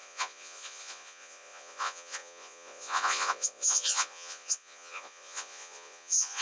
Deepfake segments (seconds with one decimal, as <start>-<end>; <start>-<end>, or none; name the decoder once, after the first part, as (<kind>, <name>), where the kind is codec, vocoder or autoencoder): 0.0-6.4 (vocoder, Vocos)